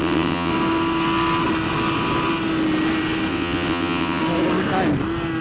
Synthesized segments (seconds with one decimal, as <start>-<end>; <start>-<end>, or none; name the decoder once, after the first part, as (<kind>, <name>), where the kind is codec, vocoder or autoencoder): 0.0-0.5 (vocoder, WaveNeXt); 3.3-4.2